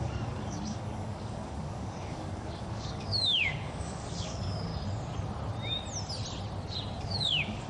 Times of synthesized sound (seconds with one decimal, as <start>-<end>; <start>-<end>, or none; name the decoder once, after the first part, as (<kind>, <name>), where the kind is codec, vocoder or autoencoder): 0.0-4.7 (codec, DAC); 7.0-7.7